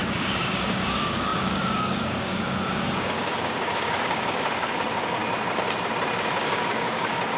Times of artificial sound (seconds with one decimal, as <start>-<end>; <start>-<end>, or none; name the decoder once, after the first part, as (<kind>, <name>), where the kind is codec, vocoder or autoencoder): 0.0-5.2 (codec, DAC); 6.4-7.4